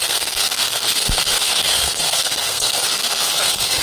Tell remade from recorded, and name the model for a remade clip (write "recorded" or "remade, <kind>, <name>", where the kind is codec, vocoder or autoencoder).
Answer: remade, codec, SNAC